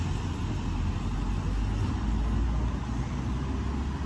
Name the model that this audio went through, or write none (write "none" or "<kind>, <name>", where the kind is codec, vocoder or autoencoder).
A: none